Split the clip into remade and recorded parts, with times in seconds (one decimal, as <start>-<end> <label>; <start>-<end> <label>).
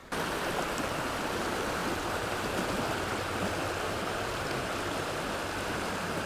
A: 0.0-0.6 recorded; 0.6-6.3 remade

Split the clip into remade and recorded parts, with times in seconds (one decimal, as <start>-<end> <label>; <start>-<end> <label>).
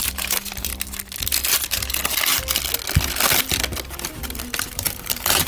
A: 0.0-0.7 remade; 0.7-1.6 recorded; 1.6-2.0 remade; 2.0-4.4 recorded; 4.4-5.5 remade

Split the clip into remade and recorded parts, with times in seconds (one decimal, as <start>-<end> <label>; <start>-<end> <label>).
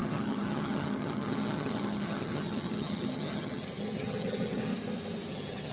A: 0.0-4.7 remade; 4.7-5.3 recorded; 5.3-5.7 remade